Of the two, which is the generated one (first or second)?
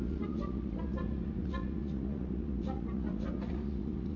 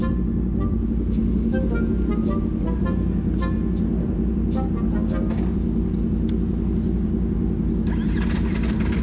first